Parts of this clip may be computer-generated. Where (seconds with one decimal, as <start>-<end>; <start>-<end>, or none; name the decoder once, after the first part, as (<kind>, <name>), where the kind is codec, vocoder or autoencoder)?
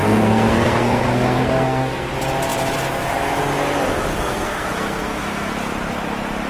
0.0-2.1 (codec, SNAC); 4.1-5.5